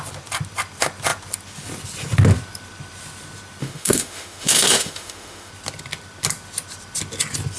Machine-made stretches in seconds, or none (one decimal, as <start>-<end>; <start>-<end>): 3.6-5.5

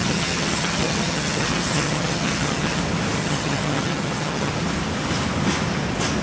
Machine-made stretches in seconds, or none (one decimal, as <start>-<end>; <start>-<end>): 0.0-2.8; 3.2-4.5